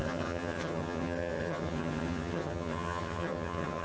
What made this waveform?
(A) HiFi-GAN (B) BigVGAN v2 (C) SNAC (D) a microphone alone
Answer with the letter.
A